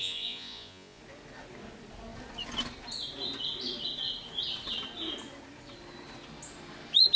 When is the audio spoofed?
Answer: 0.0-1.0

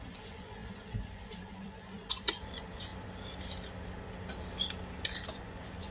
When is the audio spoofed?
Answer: 0.0-2.9; 5.3-5.9